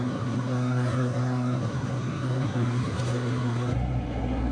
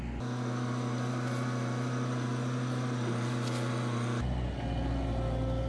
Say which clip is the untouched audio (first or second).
second